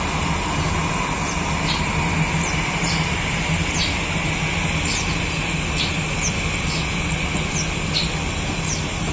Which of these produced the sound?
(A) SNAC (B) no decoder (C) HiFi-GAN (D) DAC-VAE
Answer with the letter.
B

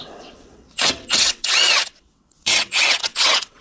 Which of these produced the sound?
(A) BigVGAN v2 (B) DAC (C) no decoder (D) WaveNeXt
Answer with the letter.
D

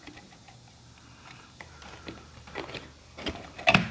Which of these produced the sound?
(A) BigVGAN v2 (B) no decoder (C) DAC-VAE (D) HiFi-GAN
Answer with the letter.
A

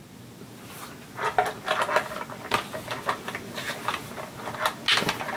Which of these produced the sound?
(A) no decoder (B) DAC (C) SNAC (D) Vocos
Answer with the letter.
A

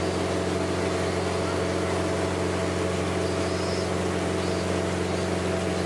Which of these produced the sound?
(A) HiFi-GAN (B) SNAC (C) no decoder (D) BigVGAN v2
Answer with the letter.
C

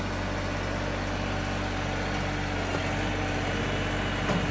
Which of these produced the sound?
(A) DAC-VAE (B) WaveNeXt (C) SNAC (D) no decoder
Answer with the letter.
D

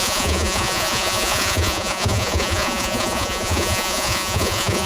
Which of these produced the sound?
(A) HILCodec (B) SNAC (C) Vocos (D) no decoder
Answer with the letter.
C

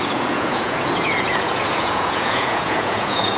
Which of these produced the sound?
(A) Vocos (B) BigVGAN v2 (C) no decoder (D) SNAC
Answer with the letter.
A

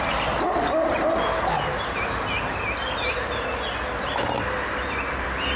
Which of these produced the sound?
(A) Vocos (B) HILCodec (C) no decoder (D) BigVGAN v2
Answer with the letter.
C